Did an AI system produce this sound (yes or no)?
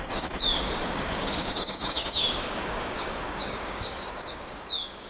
yes